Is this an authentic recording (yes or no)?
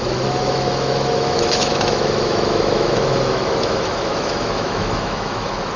no